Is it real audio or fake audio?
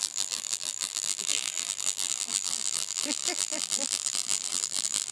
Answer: fake